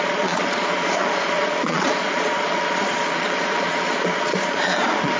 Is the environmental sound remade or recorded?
remade